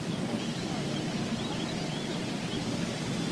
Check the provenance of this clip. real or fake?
real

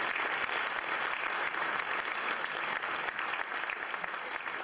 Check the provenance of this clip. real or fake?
real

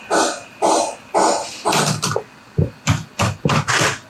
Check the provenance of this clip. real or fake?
real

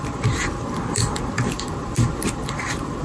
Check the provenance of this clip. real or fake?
fake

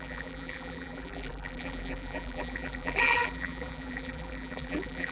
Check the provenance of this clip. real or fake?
fake